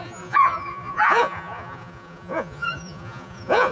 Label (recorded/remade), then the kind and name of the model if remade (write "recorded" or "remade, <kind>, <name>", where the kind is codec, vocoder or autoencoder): remade, vocoder, Vocos